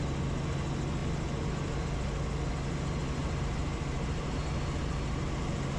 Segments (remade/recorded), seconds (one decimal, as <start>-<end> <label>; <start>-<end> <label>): 0.0-3.2 recorded; 3.2-4.6 remade; 4.6-5.8 recorded